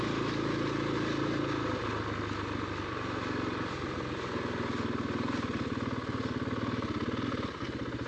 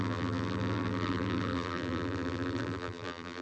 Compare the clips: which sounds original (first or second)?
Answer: first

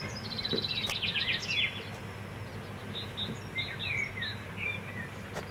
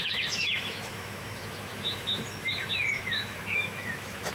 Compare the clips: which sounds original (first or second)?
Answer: first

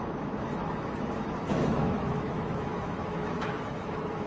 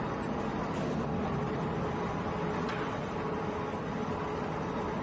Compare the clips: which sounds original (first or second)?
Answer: second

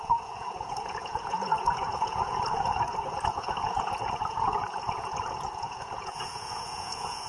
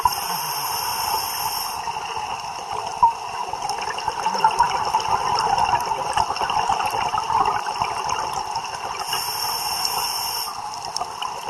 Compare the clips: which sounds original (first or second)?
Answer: second